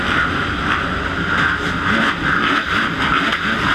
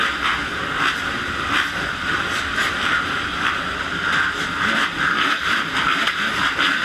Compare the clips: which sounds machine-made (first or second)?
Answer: second